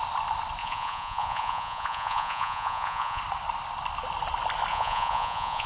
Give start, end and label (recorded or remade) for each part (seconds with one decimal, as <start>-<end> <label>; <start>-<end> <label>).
0.0-0.6 recorded; 0.6-3.2 remade; 3.2-4.7 recorded; 4.7-5.7 remade